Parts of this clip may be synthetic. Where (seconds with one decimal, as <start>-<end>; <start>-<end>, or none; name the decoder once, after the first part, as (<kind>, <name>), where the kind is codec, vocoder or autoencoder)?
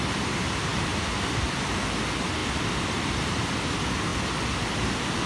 none